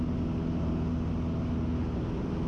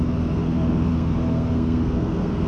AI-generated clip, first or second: second